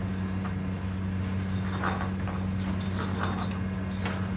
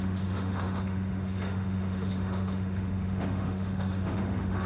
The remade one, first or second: second